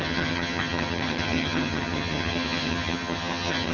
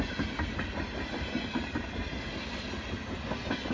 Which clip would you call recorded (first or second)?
second